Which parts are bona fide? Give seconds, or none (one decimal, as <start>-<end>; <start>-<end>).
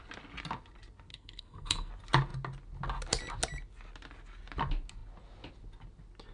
0.0-1.1; 1.9-6.3